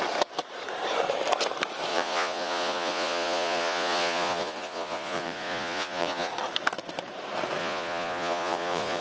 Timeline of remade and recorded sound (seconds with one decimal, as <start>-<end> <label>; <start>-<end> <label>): 0.0-1.9 recorded; 1.9-6.3 remade; 6.3-7.6 recorded; 7.6-9.0 remade